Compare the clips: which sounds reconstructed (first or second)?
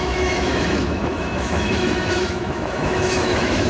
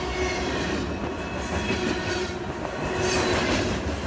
first